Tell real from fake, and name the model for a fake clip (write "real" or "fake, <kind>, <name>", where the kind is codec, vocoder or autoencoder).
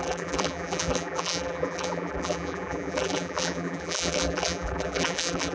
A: fake, vocoder, BigVGAN v2